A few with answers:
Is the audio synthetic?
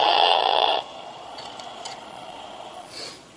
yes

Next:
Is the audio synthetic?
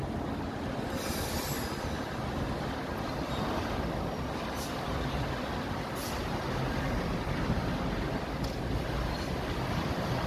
no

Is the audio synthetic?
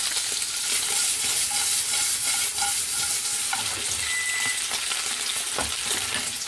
no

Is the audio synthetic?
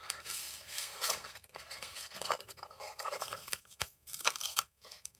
yes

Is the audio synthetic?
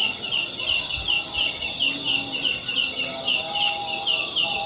no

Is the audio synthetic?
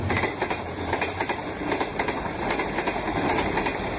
no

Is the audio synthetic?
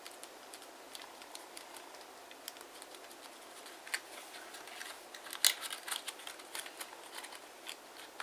no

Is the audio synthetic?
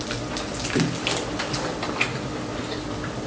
no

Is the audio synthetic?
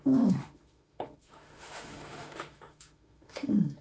yes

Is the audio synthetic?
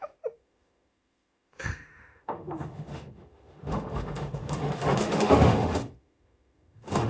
yes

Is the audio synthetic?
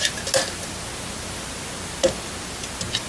no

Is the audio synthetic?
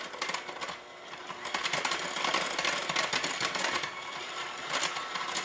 no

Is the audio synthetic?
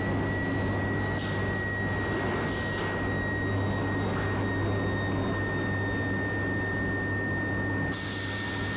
no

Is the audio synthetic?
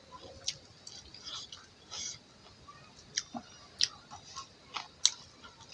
no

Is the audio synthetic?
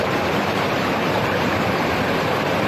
yes